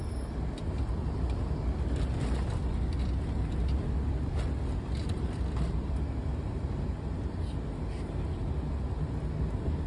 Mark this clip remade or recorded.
recorded